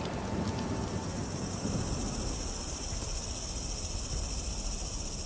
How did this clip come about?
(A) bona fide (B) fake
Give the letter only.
A